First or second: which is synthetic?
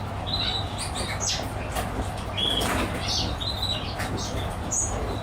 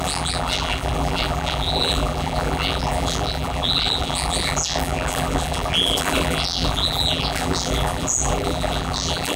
second